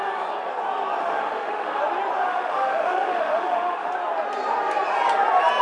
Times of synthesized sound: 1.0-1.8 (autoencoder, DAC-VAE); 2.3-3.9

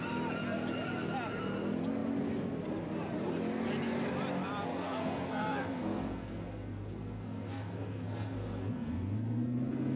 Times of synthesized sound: 4.7-10.0 (codec, SNAC)

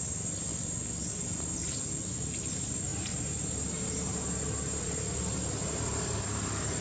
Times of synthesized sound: 0.0-0.5 (vocoder, BigVGAN v2); 2.5-6.8

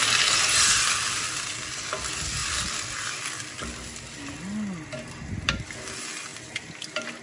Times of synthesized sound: none

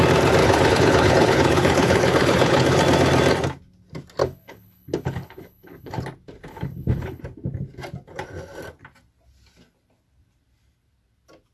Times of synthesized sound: 0.4-2.8 (codec, HILCodec); 4.2-6.0; 6.5-7.2